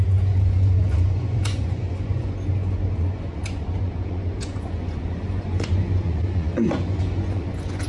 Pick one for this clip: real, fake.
fake